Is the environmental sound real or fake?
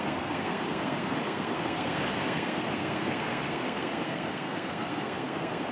fake